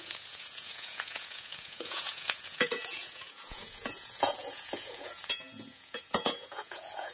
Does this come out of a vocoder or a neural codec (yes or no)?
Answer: yes